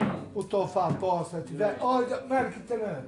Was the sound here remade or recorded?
recorded